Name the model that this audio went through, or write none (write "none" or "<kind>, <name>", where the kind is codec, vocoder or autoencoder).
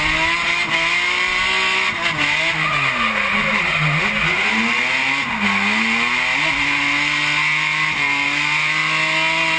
none